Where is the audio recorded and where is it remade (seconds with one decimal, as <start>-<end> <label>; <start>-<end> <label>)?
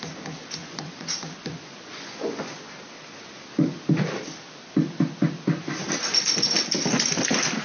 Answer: 0.0-0.6 recorded; 0.6-2.7 remade; 2.7-7.6 recorded